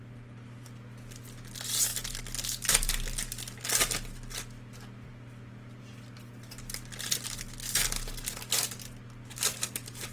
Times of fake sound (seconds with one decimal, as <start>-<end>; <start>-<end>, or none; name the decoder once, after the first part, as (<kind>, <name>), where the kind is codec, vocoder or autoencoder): none